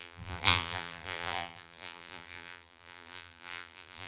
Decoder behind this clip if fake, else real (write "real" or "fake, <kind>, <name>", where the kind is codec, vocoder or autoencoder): fake, vocoder, BigVGAN v2